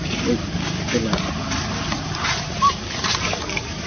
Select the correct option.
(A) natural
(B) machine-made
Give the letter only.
B